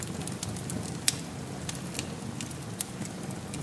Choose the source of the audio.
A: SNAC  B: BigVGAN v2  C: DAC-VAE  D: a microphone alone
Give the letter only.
D